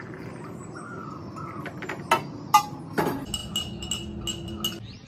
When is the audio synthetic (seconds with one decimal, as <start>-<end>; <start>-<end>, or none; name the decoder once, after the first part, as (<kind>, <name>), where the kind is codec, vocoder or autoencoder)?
none